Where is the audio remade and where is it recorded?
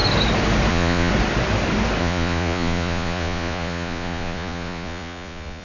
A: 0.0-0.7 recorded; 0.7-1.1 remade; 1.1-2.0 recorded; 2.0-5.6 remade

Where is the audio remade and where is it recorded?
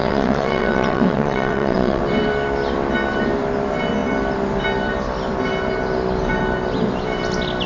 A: 0.0-2.0 remade; 2.0-7.7 recorded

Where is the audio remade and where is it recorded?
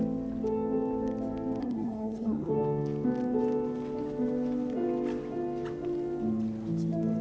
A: 0.0-1.6 recorded; 1.6-2.5 remade; 2.5-7.2 recorded